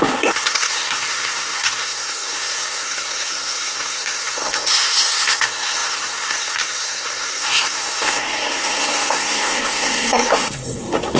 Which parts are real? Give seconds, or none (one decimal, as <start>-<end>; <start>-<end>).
none